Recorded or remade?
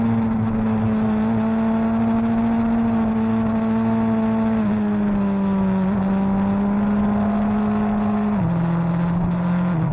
recorded